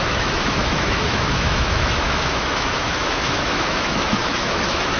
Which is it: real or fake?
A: fake